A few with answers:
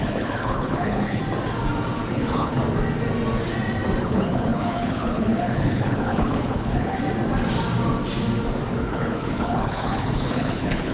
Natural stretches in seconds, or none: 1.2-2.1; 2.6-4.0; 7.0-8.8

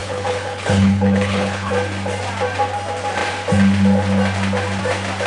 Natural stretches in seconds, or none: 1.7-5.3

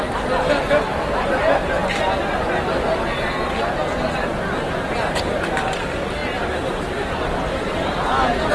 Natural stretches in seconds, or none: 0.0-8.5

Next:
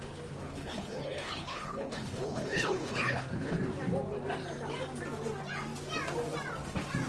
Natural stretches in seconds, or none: 0.0-0.4; 3.6-7.1

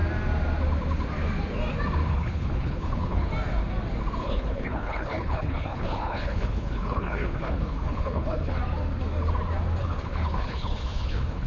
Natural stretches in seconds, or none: 0.0-2.1; 3.3-4.2; 8.6-9.8

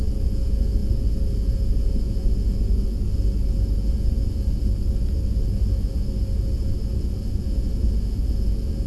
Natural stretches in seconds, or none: 0.0-8.9

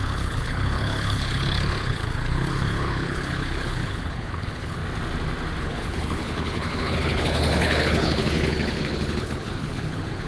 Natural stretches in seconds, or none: 4.8-5.6